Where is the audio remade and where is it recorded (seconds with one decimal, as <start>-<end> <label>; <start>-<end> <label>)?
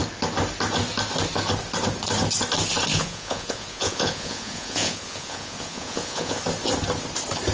0.0-2.9 recorded; 2.9-6.4 remade; 6.4-7.5 recorded